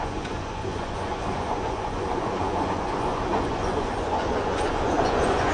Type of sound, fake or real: fake